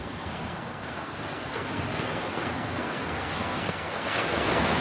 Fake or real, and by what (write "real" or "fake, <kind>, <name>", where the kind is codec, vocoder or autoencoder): fake, codec, SNAC